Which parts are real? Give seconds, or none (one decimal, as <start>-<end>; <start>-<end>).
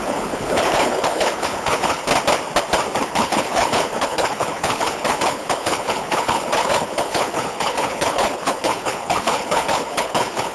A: 2.1-3.0